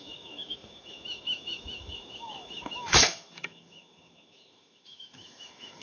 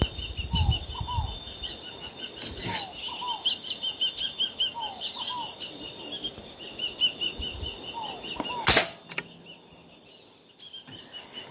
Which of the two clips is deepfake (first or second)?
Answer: first